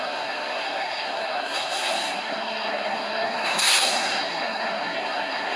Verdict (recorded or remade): remade